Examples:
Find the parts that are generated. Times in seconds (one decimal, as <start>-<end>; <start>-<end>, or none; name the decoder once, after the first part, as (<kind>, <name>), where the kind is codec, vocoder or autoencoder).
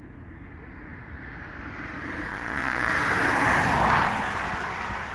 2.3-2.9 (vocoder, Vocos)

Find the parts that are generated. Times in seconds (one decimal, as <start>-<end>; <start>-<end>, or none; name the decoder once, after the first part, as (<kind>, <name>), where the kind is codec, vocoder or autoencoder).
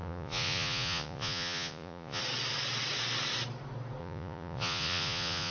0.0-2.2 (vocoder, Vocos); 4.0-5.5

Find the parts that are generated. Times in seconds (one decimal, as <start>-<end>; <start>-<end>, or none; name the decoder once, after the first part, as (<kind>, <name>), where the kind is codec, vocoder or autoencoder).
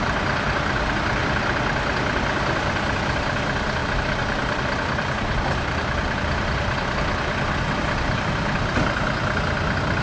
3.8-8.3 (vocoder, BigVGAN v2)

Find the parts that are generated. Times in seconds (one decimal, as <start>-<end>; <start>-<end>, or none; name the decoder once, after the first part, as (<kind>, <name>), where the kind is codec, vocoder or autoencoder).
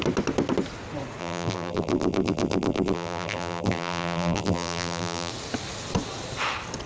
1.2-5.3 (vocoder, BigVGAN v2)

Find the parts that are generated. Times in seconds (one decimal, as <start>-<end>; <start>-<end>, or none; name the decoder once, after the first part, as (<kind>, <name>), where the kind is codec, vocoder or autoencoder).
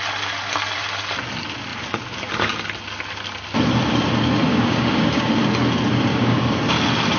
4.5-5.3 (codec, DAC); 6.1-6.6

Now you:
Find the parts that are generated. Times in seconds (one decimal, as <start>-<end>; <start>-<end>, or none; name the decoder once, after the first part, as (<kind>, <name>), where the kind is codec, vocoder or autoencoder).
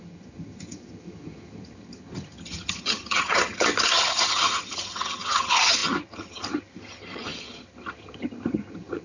0.0-9.0 (vocoder, HiFi-GAN)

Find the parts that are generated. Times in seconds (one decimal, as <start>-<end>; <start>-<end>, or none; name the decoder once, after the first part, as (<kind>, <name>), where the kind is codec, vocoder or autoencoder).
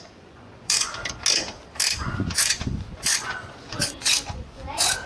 0.0-0.9 (vocoder, Vocos); 2.0-5.1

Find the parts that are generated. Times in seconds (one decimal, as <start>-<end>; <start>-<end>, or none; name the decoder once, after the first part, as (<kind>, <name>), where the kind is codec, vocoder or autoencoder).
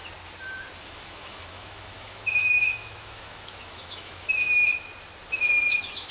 0.8-4.7 (autoencoder, DAC-VAE); 5.3-6.1